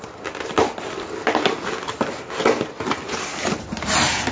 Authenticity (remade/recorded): recorded